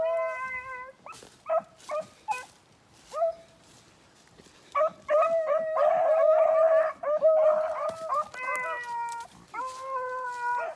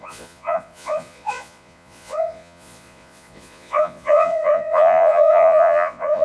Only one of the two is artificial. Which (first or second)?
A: second